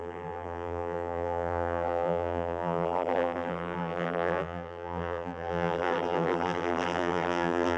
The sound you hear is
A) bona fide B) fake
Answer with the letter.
B